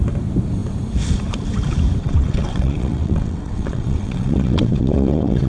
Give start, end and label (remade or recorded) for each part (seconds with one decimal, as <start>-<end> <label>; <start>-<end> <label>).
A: 0.0-2.0 recorded; 2.0-5.5 remade